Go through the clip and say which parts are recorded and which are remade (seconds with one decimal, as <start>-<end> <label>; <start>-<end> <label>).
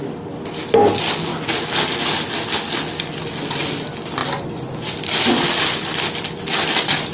0.0-7.1 recorded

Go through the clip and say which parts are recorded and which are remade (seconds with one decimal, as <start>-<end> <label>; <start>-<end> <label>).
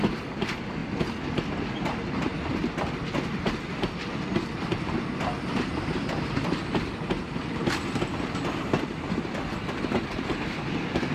0.0-11.1 recorded